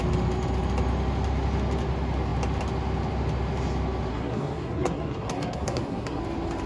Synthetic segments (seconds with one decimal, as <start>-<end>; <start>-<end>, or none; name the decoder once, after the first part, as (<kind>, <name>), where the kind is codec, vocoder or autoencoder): 4.1-6.2 (codec, SNAC)